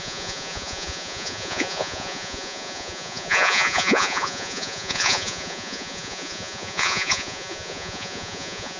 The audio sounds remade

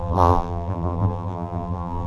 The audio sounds remade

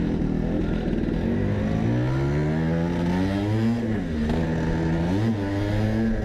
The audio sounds recorded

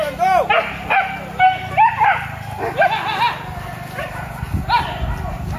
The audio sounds recorded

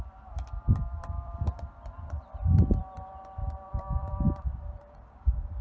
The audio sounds remade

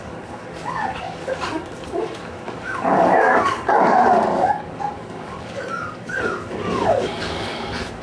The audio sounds remade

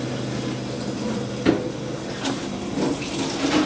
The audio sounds recorded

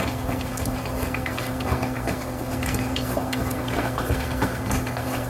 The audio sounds remade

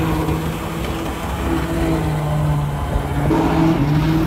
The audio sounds recorded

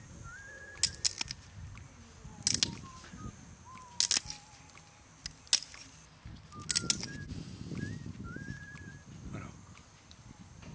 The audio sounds recorded